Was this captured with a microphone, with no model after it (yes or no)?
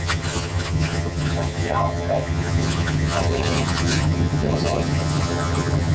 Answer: no